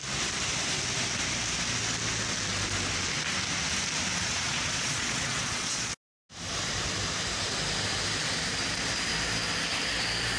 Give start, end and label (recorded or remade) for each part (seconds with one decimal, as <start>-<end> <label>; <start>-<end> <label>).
0.0-4.1 recorded; 4.1-5.9 remade; 5.9-10.4 recorded